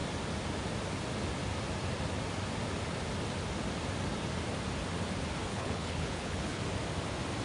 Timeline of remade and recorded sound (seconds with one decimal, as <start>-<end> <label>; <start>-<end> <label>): 0.0-5.5 recorded; 5.5-6.6 remade; 6.6-7.4 recorded